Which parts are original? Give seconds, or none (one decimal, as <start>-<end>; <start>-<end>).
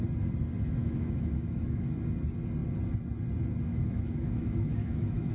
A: 0.0-0.8; 1.9-3.7